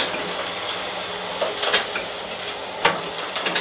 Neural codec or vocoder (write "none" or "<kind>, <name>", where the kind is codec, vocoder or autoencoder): none